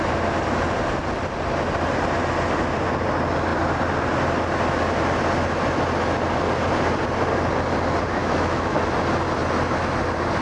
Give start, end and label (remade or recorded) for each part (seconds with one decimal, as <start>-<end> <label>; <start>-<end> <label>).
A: 0.0-8.2 recorded; 8.2-8.8 remade; 8.8-10.4 recorded